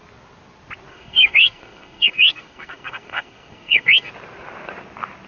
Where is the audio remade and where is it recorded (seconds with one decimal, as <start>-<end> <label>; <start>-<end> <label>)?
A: 0.0-0.9 recorded; 0.9-4.1 remade; 4.1-5.3 recorded

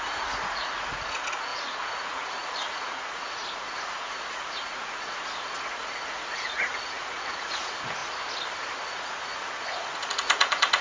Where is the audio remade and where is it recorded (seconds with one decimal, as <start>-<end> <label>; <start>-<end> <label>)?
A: 0.0-8.0 remade; 8.0-8.8 recorded; 8.8-10.8 remade

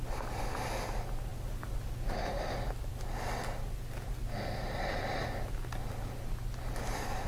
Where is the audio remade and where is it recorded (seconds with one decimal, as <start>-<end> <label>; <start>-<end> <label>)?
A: 0.0-7.3 recorded

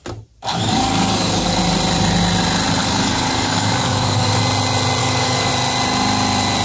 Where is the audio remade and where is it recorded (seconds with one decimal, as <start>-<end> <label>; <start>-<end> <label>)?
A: 0.0-0.5 recorded; 0.5-1.6 remade; 1.6-2.8 recorded; 2.8-4.4 remade; 4.4-5.0 recorded; 5.0-5.5 remade; 5.5-6.6 recorded

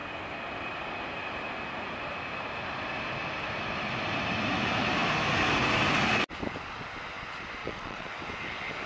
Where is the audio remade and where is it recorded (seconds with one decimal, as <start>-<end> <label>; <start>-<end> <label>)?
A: 0.0-7.6 recorded; 7.6-8.1 remade; 8.1-8.9 recorded

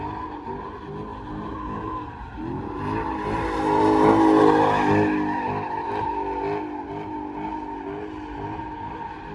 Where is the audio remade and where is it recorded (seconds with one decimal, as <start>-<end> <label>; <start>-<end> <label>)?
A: 0.0-9.3 recorded

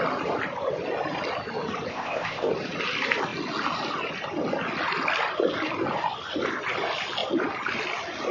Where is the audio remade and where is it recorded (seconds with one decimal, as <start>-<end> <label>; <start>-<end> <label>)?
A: 0.0-1.9 recorded; 1.9-2.5 remade; 2.5-8.3 recorded